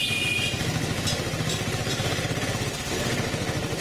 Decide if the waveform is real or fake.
real